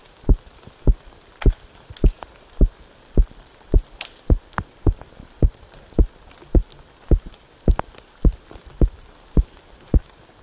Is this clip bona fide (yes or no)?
yes